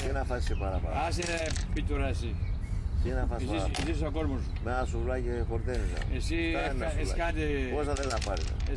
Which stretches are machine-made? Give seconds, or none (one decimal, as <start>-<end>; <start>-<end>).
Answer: 0.9-1.4; 6.6-7.3